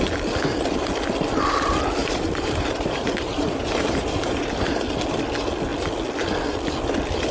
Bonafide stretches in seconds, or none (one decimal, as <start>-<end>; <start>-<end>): 0.0-2.0; 4.4-7.3